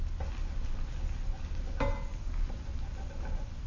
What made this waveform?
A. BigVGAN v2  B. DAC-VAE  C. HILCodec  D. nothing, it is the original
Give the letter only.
D